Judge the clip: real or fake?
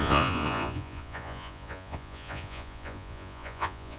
fake